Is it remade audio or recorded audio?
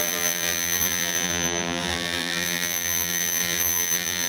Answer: remade